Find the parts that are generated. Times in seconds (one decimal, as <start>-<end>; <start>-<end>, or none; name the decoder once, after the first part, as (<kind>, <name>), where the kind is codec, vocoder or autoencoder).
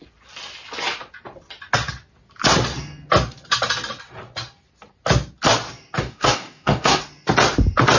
6.0-7.0 (codec, DAC)